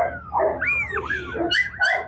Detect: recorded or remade recorded